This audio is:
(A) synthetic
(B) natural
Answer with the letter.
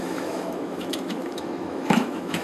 A